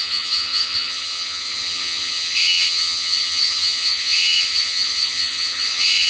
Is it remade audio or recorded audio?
remade